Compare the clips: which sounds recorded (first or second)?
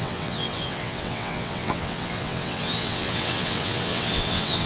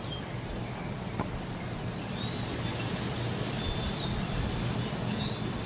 second